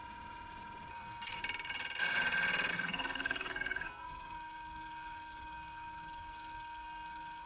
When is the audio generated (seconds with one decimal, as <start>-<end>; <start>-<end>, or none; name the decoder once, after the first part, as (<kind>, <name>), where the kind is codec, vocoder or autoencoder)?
0.9-1.4 (codec, SNAC); 2.7-7.5